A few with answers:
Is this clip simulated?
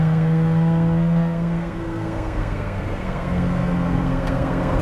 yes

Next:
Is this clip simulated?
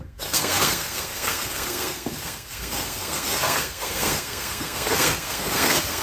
yes